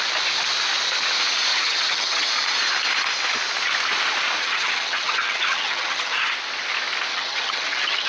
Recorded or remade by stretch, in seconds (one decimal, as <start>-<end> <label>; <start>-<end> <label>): 0.0-1.5 recorded; 1.5-2.3 remade; 2.3-4.4 recorded; 4.4-6.3 remade; 6.3-7.1 recorded; 7.1-8.1 remade